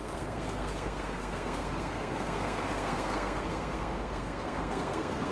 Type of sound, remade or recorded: remade